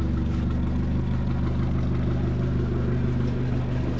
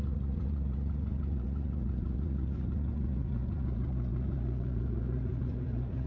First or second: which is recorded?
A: first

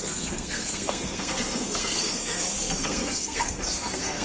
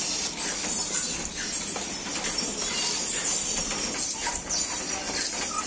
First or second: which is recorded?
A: second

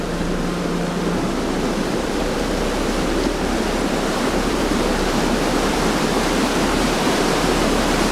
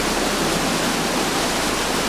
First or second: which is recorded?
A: second